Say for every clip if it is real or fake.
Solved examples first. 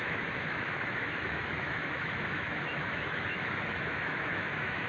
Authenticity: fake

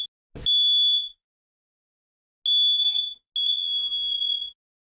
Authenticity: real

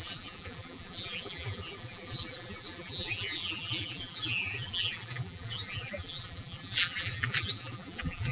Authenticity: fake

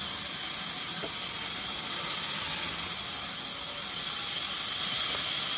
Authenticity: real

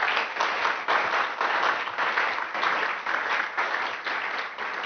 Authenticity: real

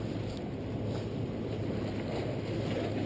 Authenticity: real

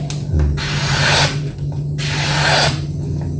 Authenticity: real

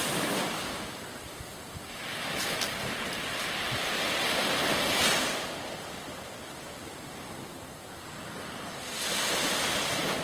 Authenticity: real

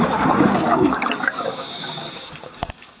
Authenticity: fake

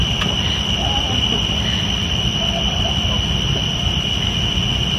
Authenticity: real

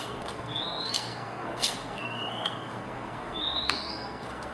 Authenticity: fake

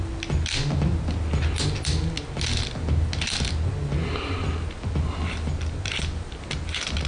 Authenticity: real